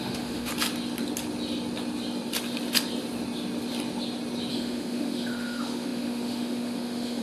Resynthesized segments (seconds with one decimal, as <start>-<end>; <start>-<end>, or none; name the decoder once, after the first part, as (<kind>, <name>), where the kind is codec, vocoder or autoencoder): 0.0-0.5 (autoencoder, DAC-VAE); 4.5-7.2